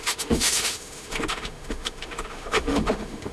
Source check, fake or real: fake